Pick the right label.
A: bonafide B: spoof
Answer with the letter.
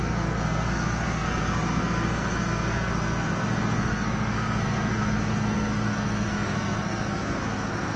B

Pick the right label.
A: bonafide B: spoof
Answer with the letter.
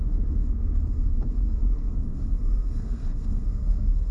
B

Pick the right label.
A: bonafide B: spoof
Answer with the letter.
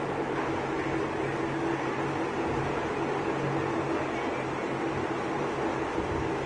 A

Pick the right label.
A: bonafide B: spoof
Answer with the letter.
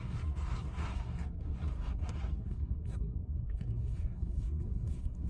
B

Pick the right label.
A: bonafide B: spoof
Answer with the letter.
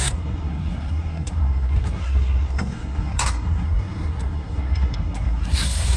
B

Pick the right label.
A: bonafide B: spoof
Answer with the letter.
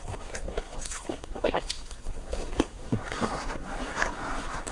B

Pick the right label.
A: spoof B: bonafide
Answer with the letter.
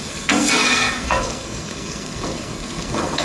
A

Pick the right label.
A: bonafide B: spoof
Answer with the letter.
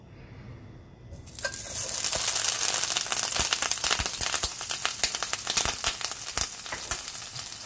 A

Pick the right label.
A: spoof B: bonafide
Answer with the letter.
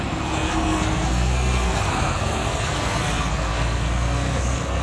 A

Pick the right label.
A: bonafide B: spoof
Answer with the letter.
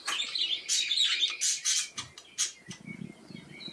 A